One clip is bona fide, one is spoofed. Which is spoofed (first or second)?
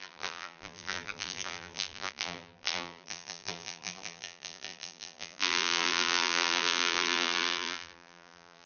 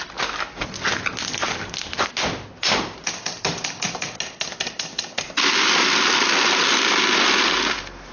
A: first